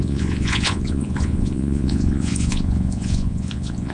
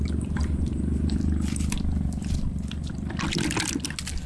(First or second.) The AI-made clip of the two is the first